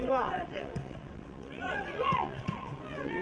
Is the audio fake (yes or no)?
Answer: yes